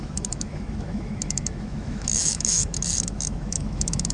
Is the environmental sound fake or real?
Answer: fake